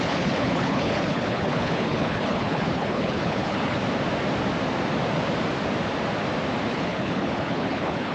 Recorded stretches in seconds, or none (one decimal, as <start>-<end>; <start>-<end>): 3.8-6.7